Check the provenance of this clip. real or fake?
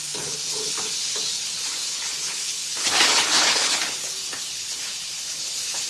fake